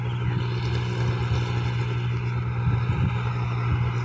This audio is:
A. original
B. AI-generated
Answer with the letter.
A